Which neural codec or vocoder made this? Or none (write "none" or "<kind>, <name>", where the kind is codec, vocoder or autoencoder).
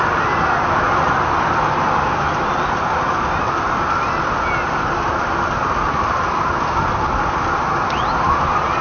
none